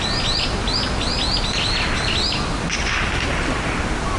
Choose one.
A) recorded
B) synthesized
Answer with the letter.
A